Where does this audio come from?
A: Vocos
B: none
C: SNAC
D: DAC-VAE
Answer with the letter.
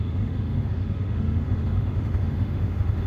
D